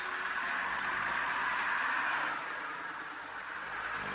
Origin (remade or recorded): recorded